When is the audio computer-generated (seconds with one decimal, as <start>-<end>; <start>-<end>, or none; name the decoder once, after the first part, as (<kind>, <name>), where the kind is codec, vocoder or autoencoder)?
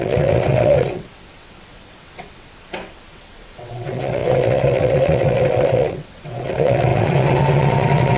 0.0-8.2 (vocoder, WaveNeXt)